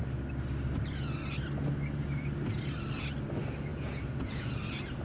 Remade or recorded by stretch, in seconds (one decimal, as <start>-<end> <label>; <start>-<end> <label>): 0.0-3.7 recorded; 3.7-4.6 remade; 4.6-5.0 recorded